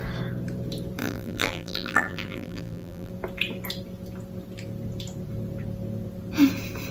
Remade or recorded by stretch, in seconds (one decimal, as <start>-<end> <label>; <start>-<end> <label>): 0.0-1.0 recorded; 1.0-3.1 remade; 3.1-6.9 recorded